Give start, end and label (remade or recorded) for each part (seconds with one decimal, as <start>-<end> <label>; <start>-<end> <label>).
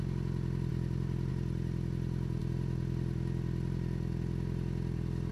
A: 0.0-5.3 recorded